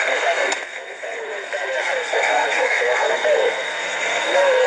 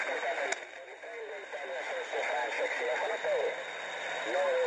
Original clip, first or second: second